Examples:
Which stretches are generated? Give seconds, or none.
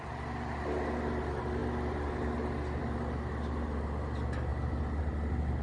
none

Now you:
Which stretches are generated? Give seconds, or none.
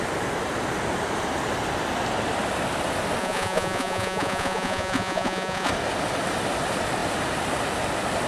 3.2-5.7 (vocoder, Vocos)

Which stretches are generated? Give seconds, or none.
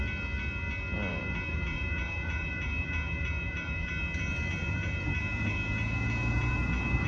1.1-3.9 (vocoder, Vocos); 4.6-7.1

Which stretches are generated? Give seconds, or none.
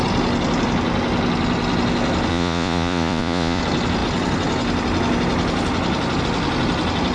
2.3-3.6 (vocoder, Vocos)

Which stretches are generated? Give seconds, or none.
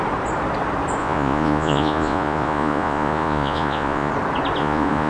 1.0-4.1 (vocoder, Vocos); 4.6-5.1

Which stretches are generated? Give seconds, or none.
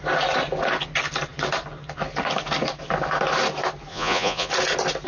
3.9-4.5 (vocoder, Vocos)